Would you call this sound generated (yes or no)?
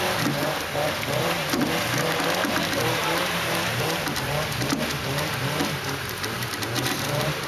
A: yes